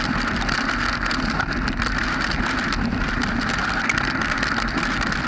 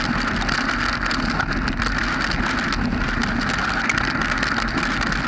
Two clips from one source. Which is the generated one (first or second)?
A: first